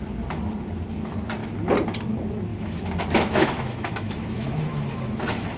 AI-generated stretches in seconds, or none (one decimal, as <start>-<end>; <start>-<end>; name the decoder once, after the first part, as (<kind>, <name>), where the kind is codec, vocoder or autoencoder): 2.5-5.6 (autoencoder, DAC-VAE)